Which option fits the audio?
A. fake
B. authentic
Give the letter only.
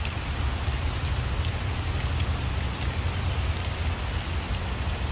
B